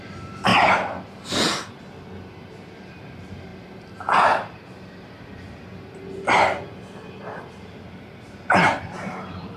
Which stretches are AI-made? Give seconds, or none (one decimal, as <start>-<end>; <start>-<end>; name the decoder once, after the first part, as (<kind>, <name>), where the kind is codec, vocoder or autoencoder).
0.0-0.5 (vocoder, BigVGAN v2); 2.9-3.5; 7.2-9.6